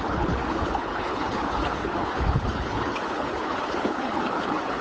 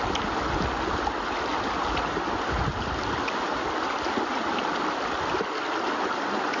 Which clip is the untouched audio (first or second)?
second